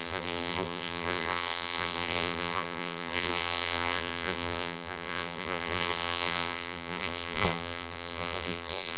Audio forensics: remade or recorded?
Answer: remade